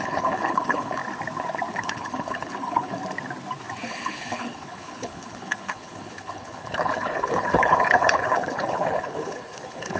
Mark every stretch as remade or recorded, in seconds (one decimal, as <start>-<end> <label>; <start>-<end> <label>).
0.0-1.0 remade; 1.0-1.7 recorded; 1.7-3.0 remade; 3.0-3.9 recorded; 3.9-10.0 remade